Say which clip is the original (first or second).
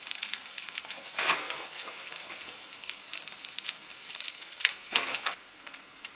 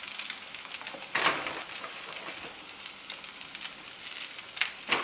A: second